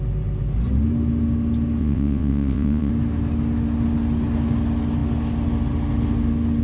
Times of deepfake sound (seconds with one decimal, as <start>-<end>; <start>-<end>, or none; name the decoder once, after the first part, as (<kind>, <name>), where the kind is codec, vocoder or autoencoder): 1.8-2.9 (vocoder, WaveNeXt)